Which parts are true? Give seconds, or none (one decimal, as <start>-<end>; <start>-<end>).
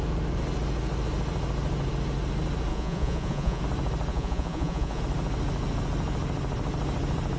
0.0-2.7; 3.6-4.1; 5.0-7.4